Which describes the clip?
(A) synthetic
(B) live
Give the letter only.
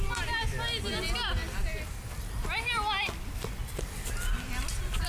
B